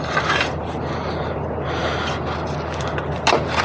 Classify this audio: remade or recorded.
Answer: recorded